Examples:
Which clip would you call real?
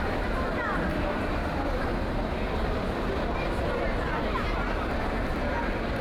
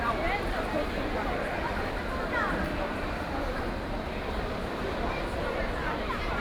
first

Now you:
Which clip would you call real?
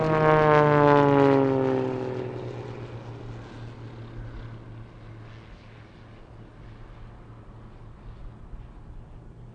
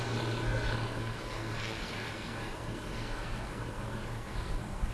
first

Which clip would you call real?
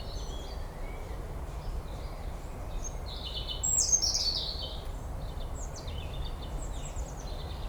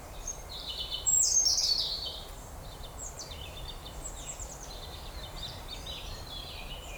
first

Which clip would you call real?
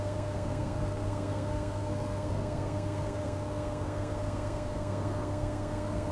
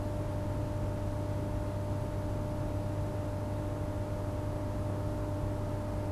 second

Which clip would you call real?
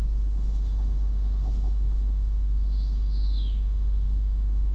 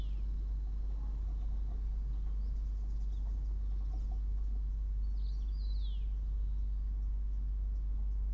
second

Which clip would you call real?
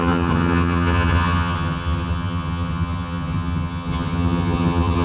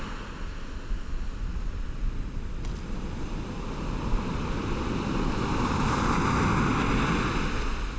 second